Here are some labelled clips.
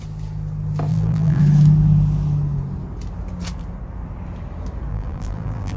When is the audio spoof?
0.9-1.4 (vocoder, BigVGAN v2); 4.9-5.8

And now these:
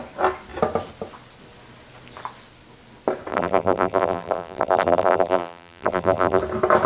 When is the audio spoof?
3.3-6.4 (vocoder, BigVGAN v2)